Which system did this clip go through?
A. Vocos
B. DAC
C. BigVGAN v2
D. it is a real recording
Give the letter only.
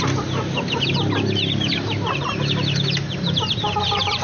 D